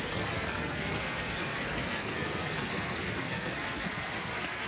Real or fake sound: fake